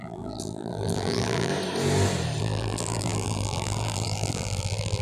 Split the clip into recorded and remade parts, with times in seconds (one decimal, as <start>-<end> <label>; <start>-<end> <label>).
0.0-1.5 remade; 1.5-2.4 recorded; 2.4-5.0 remade